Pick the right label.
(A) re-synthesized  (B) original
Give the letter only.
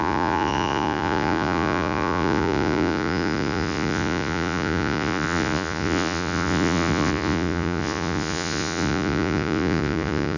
A